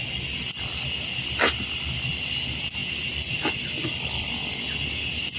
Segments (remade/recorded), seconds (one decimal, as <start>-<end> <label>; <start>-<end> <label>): 0.0-3.8 recorded; 3.8-4.3 remade; 4.3-5.4 recorded